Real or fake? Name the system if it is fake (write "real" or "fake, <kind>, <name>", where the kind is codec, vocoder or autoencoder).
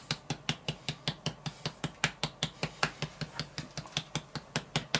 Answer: real